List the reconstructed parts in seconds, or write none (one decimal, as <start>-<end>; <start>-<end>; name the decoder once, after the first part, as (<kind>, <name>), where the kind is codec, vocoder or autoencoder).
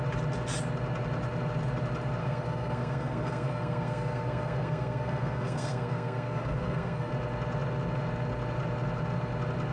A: 2.2-7.1 (codec, SNAC)